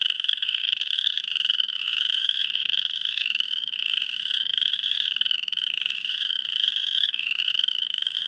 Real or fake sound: fake